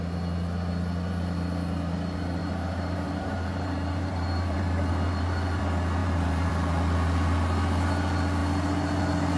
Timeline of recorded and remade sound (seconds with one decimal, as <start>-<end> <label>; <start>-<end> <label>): 0.0-2.4 recorded; 2.4-5.6 remade; 5.6-6.0 recorded; 6.0-6.5 remade; 6.5-9.4 recorded